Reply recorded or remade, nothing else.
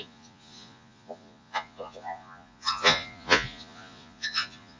remade